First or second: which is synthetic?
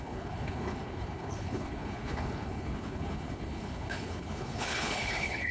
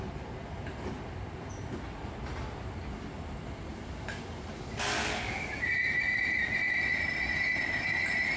first